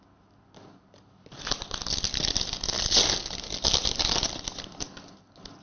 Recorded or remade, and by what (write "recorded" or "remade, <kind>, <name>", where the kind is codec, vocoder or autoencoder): recorded